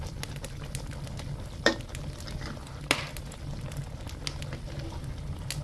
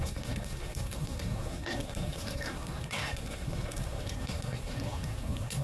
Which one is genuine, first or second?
first